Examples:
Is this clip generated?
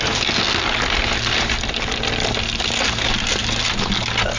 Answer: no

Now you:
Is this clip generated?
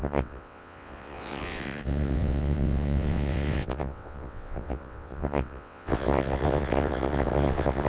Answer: yes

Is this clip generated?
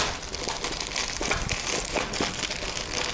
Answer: no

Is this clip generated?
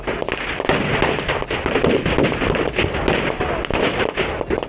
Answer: no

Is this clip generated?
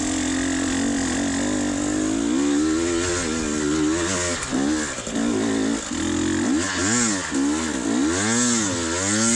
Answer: no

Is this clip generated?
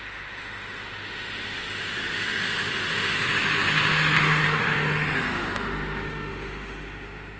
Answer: yes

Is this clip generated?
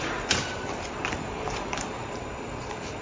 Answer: yes